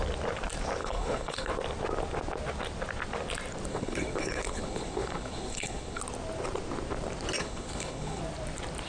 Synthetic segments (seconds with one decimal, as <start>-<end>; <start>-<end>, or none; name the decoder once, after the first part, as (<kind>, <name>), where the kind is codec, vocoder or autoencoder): 0.8-1.5 (codec, HILCodec); 3.7-6.0; 7.4-8.2